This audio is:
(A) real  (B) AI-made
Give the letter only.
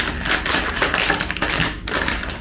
A